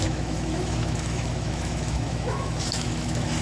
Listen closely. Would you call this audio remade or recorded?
remade